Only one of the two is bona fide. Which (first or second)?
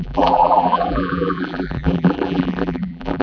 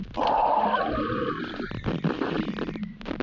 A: second